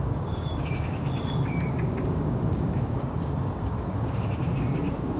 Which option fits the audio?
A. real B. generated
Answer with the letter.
B